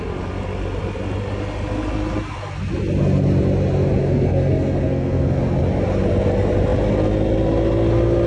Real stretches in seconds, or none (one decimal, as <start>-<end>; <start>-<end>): 0.0-4.0; 5.4-8.3

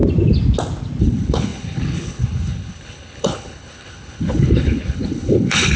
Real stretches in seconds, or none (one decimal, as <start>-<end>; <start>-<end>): 0.0-1.0

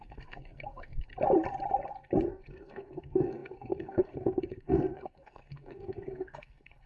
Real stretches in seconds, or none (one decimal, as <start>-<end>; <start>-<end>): 1.1-2.3

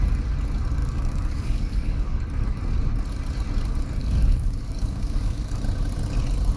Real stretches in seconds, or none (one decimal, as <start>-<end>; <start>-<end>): 0.0-0.8; 2.2-4.0; 5.6-6.6